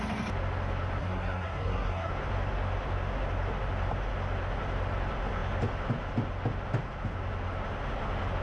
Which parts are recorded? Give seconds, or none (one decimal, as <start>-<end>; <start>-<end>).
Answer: 0.0-1.0; 2.1-8.4